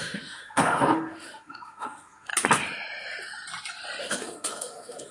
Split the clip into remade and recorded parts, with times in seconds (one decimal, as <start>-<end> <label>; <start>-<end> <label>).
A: 0.0-2.3 remade; 2.3-4.0 recorded; 4.0-5.1 remade